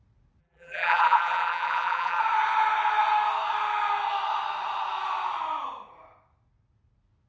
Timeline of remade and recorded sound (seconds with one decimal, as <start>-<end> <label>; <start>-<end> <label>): 0.0-0.4 recorded; 0.4-2.2 remade; 2.2-7.3 recorded